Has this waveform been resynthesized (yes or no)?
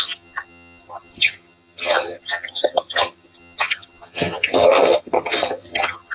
yes